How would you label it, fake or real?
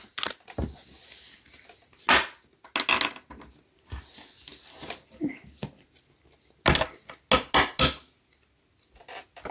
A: real